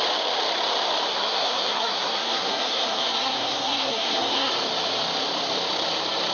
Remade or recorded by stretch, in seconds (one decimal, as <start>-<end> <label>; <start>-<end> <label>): 0.0-1.1 recorded; 1.1-4.5 remade; 4.5-6.3 recorded